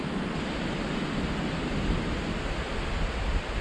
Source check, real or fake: real